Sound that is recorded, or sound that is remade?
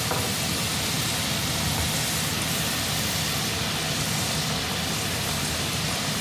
recorded